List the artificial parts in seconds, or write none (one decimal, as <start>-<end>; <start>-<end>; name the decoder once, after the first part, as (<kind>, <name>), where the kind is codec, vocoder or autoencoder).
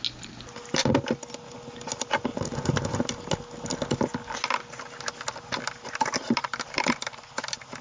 2.3-3.0 (vocoder, BigVGAN v2)